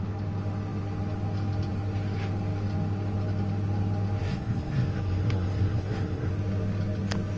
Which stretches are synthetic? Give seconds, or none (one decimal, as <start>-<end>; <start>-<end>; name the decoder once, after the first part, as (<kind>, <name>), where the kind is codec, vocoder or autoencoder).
4.2-6.3 (codec, SNAC)